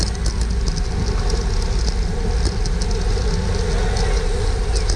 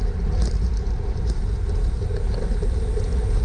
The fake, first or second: second